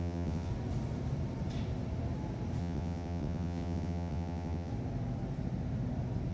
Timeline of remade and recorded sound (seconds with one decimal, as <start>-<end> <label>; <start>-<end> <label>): 0.0-0.5 remade; 0.5-2.6 recorded; 2.6-4.7 remade; 4.7-6.3 recorded